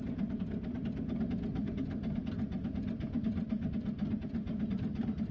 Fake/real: real